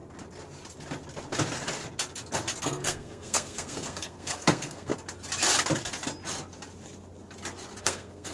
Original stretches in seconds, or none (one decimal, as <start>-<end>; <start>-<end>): 0.0-2.6; 4.9-7.8